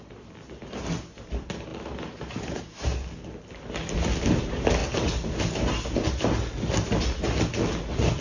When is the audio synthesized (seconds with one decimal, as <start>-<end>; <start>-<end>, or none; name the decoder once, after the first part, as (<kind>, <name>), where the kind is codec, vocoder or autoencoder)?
none